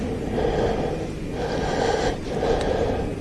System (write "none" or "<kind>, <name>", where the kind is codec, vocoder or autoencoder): none